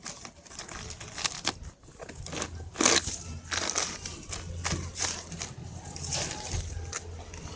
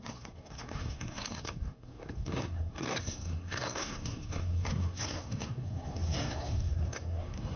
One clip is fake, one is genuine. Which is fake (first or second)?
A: second